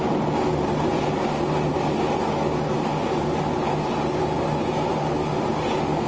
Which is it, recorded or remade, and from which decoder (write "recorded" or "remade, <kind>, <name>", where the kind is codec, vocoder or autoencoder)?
recorded